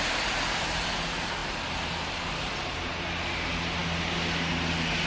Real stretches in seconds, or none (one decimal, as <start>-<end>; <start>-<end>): 0.0-5.1